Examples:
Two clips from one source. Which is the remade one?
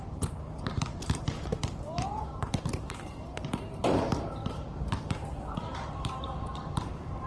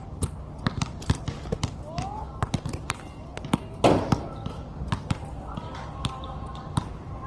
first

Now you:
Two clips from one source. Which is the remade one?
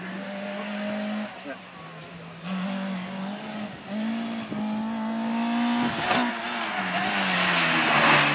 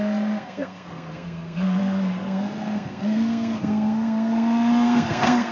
second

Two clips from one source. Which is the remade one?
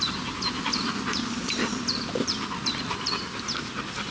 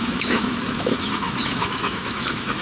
second